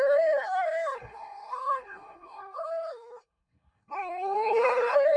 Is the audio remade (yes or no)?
yes